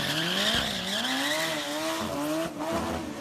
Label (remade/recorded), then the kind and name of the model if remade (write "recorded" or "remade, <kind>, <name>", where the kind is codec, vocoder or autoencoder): recorded